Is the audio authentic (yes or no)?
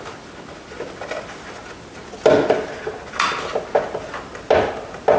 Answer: yes